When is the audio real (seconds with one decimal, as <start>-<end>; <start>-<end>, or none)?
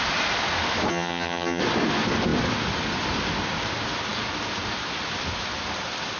0.0-0.9; 1.6-6.2